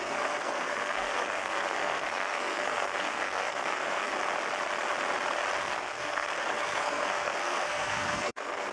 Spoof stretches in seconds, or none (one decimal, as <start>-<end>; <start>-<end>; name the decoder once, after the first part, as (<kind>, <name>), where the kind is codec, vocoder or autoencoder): 0.0-4.1 (codec, SNAC); 5.6-8.7